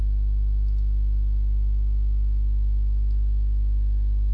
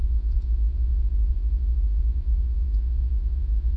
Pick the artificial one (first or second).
second